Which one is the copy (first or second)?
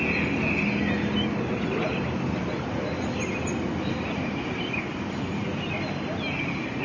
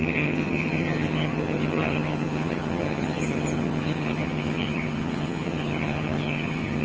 second